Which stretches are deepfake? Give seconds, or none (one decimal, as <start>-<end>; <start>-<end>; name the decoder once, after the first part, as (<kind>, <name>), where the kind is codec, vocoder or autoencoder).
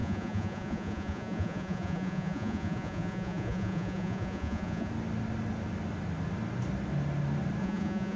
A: 0.0-4.9 (vocoder, Vocos); 7.6-8.2